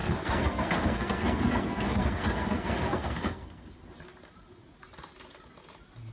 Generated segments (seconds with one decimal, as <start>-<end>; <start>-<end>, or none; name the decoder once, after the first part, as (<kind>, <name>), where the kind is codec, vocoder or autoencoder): 0.0-3.7 (codec, SNAC)

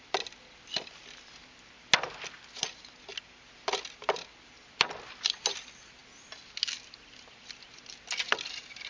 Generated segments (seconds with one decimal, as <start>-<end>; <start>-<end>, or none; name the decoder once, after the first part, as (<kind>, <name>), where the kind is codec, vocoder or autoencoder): none